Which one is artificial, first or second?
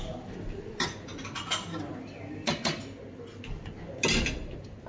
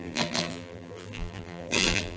second